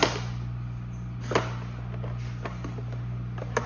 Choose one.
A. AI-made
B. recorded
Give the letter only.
B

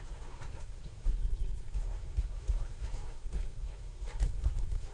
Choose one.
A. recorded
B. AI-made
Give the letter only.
B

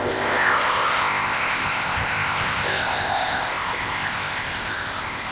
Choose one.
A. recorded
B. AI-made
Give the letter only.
B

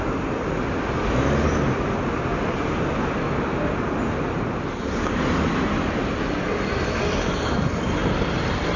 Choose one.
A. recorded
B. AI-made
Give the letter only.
A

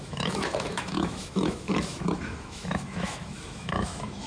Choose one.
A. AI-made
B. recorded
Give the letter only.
A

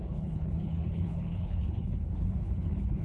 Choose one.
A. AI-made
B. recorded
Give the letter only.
A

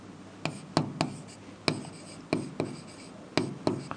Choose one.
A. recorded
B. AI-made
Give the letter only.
A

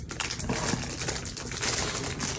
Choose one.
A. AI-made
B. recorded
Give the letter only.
B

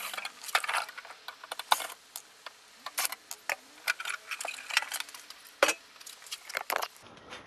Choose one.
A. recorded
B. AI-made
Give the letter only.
A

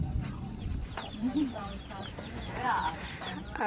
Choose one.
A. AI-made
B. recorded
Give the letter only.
A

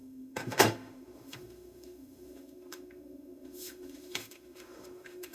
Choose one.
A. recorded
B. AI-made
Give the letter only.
B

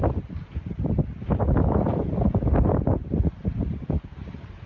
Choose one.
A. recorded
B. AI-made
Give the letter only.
A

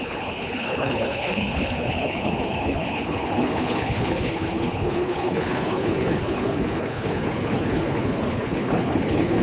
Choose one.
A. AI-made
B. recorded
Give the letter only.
A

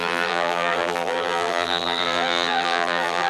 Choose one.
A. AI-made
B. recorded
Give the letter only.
A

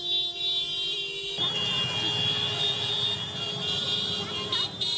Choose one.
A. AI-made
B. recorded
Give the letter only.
B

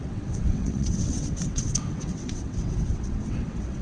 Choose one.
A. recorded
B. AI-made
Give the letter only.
B